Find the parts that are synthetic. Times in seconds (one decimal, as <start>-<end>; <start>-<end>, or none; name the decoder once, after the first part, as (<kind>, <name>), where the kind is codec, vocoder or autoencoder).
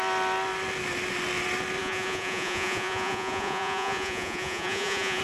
1.8-5.2 (vocoder, Vocos)